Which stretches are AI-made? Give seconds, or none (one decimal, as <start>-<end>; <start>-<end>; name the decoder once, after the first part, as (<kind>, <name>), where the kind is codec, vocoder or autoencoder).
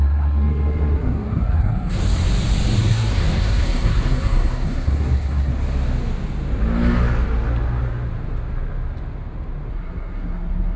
0.0-2.0 (codec, SNAC); 2.8-5.5; 9.7-10.8